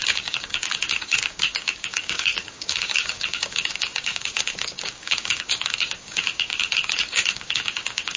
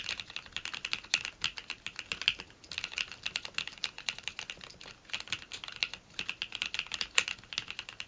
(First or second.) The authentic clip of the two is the second